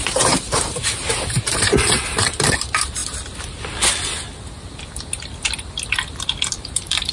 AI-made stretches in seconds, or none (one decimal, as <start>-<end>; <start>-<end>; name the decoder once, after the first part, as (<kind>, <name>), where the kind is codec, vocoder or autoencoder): 0.0-3.0 (vocoder, BigVGAN v2); 6.5-7.1